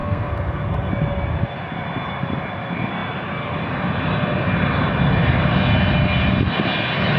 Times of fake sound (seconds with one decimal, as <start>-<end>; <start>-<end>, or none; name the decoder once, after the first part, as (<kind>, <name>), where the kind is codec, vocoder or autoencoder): 0.0-0.9 (codec, SNAC)